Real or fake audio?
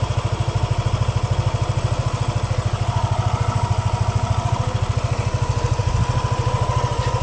real